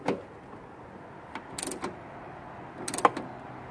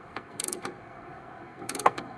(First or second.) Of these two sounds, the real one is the first